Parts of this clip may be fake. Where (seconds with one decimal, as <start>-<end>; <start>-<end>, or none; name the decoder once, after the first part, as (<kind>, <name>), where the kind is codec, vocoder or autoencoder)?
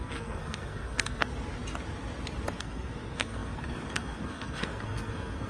0.0-1.3 (codec, SNAC); 2.6-5.5